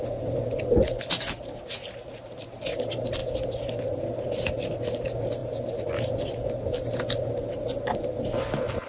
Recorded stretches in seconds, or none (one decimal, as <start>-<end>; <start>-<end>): 0.0-8.9